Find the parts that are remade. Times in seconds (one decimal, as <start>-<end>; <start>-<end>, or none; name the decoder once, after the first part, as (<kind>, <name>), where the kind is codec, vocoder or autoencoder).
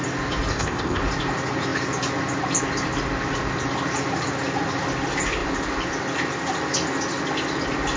0.5-1.0 (codec, ZipCodec)